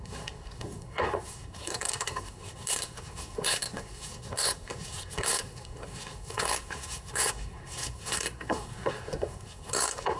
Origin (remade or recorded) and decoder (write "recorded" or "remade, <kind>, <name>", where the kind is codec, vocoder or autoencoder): remade, codec, SNAC